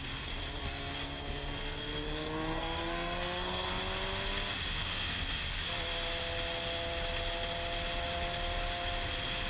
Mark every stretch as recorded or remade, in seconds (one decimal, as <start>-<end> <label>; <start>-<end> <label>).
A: 0.0-0.6 recorded; 0.6-3.8 remade; 3.8-4.8 recorded; 4.8-5.6 remade; 5.6-9.5 recorded

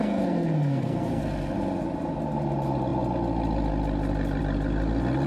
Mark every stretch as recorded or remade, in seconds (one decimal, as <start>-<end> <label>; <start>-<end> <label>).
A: 0.0-1.2 remade; 1.2-5.3 recorded

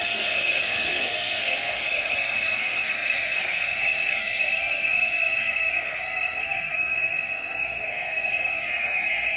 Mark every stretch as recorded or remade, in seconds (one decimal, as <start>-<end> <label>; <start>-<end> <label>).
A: 0.0-9.4 remade

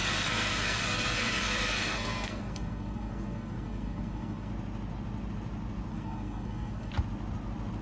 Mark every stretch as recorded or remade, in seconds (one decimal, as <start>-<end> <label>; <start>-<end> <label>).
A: 0.0-4.5 remade; 4.5-5.9 recorded; 5.9-6.9 remade; 6.9-7.8 recorded

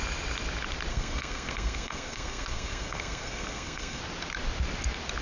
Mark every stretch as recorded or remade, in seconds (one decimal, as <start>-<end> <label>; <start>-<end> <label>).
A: 0.0-0.9 recorded; 0.9-4.0 remade; 4.0-5.2 recorded

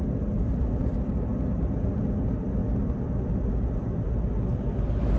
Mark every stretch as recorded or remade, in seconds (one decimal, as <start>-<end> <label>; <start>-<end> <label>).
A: 0.0-5.2 recorded

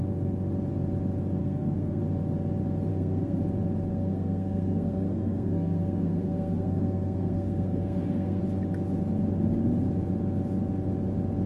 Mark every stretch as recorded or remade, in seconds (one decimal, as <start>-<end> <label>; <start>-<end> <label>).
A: 0.0-1.4 recorded; 1.4-2.0 remade; 2.0-2.9 recorded; 2.9-3.4 remade; 3.4-3.9 recorded; 3.9-8.4 remade; 8.4-11.5 recorded